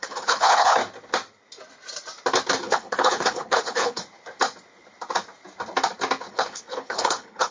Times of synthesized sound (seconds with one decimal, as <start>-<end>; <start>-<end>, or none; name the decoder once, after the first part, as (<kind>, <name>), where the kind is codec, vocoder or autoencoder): 0.0-0.8 (codec, HILCodec); 2.6-4.0; 6.3-7.5